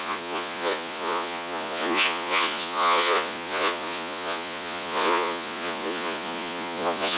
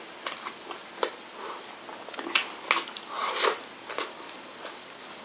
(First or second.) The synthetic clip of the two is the first